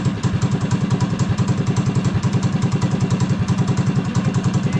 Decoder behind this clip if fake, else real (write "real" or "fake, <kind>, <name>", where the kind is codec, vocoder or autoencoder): real